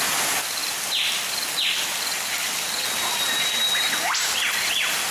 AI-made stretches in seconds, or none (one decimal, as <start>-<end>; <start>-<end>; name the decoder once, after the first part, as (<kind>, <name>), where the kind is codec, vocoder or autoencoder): none